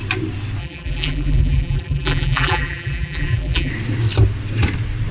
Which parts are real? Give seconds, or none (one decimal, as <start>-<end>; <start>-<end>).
0.0-0.6; 3.7-5.1